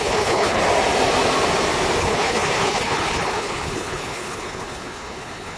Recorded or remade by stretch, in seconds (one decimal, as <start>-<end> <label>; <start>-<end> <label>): 0.0-0.6 remade; 0.6-2.0 recorded; 2.0-5.6 remade